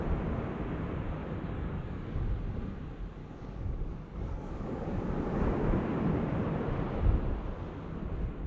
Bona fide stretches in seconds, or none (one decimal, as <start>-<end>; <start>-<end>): 0.0-1.2; 2.2-3.2; 5.0-8.5